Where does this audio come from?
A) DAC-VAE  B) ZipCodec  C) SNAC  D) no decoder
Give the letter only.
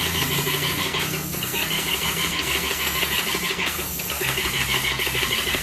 C